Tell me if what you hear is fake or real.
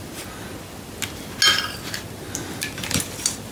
real